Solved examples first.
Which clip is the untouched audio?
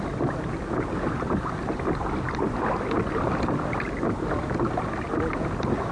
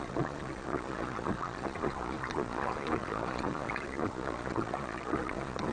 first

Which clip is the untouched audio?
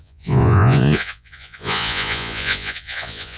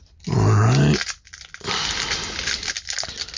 second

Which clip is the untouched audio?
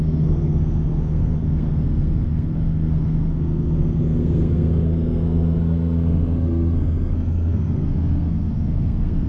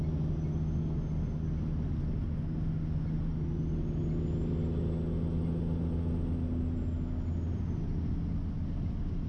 second